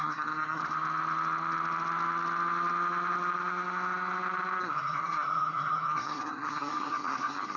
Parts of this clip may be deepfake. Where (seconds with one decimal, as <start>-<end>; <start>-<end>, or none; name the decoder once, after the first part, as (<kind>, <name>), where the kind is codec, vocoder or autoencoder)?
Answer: 0.0-0.6 (codec, SNAC); 4.6-7.6